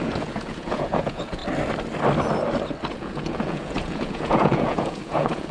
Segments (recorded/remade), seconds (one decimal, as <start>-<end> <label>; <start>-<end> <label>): 0.0-1.4 remade; 1.4-2.9 recorded; 2.9-5.5 remade